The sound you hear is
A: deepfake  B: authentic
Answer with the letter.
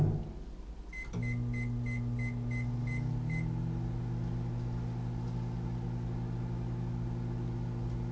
B